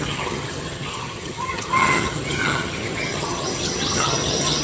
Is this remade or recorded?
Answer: remade